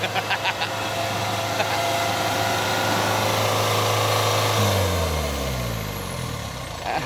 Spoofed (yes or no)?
no